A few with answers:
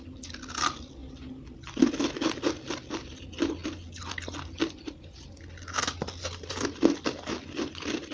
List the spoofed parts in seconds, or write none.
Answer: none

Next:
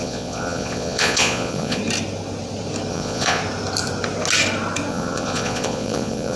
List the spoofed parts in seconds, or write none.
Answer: 0.0-1.8 (vocoder, Vocos); 2.9-3.4; 4.9-6.4

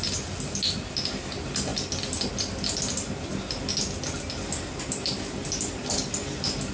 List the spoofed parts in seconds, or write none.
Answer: none

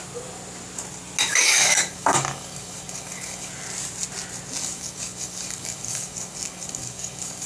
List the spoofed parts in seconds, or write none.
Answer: 1.3-3.5 (codec, DAC); 4.6-7.5

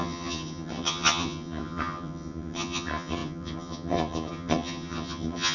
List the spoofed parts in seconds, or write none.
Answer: 0.0-5.5 (vocoder, HiFi-GAN)

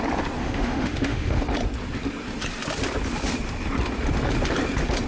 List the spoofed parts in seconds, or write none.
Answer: 0.4-1.4 (autoencoder, DAC-VAE)